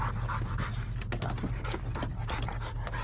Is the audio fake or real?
real